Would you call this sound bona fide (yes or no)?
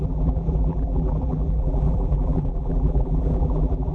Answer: no